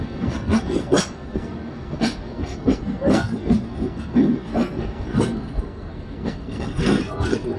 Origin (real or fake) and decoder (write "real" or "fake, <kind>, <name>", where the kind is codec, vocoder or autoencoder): fake, codec, SNAC